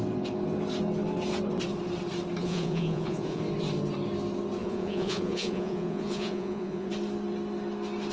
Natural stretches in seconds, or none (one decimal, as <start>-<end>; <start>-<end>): 0.0-2.4; 3.4-4.6; 6.9-8.1

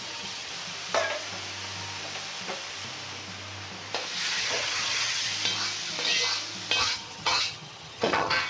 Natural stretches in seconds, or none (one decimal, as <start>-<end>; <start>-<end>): 0.5-4.4; 5.3-6.8

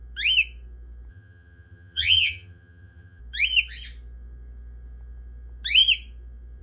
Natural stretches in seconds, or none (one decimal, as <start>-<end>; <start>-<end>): 0.0-1.1; 3.2-6.6

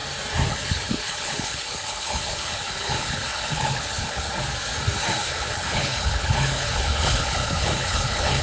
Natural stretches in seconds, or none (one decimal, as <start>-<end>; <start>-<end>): 0.0-0.5; 4.3-5.2